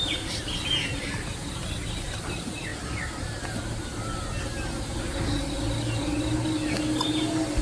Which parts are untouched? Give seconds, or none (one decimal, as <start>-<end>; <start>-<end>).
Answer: 0.0-7.6